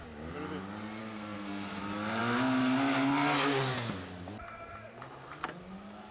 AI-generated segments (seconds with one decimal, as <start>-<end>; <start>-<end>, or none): 1.0-1.8